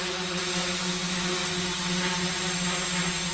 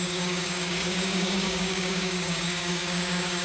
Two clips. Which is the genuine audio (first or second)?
first